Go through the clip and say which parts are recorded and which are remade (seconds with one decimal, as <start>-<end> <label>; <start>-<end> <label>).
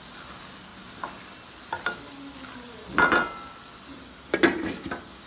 0.0-5.3 recorded